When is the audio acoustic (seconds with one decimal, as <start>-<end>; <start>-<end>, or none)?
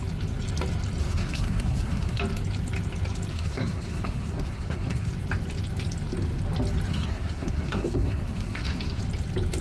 0.0-1.0; 2.2-3.3; 5.1-6.9; 9.0-9.6